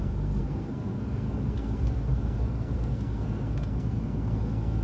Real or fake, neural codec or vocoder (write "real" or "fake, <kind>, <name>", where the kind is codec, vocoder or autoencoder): fake, codec, SNAC